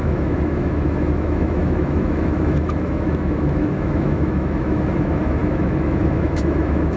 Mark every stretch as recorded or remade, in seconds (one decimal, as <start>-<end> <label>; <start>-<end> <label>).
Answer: 0.0-7.0 remade